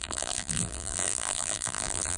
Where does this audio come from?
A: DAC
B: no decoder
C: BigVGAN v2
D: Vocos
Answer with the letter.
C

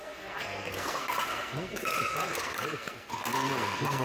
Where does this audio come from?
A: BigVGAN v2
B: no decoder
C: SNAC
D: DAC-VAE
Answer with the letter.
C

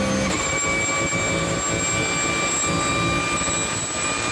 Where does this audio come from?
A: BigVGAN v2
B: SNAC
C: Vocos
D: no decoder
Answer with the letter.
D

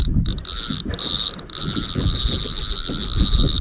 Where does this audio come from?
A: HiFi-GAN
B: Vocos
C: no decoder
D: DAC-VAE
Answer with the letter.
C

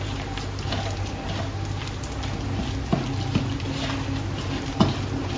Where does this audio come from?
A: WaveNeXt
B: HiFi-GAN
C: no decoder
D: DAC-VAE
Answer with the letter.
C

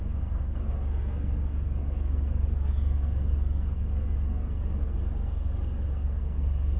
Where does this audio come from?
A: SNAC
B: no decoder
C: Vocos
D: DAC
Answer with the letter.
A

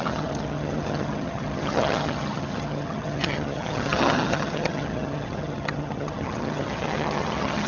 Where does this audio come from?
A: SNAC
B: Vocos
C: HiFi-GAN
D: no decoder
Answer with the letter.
C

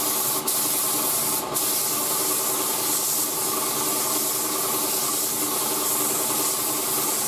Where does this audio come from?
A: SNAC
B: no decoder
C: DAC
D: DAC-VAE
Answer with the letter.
B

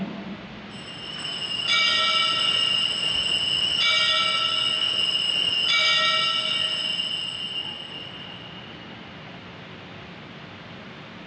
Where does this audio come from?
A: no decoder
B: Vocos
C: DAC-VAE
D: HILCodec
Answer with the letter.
A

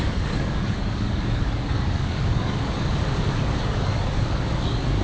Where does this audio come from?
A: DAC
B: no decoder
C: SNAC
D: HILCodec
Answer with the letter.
A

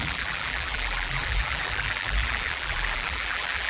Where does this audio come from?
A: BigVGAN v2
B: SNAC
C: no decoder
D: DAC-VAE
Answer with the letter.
A